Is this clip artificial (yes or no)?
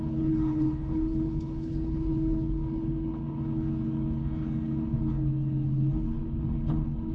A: yes